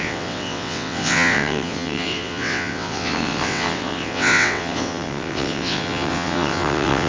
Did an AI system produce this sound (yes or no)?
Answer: yes